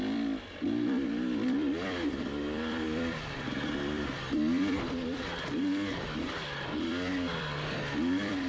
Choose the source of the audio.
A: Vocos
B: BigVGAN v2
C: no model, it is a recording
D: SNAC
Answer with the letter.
B